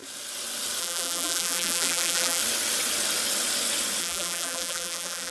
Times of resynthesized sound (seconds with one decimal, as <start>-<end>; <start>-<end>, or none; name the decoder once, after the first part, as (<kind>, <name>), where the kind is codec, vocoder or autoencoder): 0.8-2.4 (vocoder, BigVGAN v2); 4.0-5.3